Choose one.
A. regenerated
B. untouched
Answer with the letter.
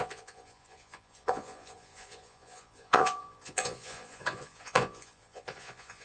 A